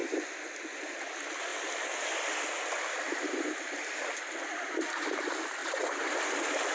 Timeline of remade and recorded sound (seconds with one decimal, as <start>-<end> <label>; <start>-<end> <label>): 0.0-6.7 recorded